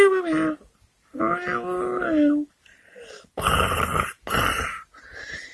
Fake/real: real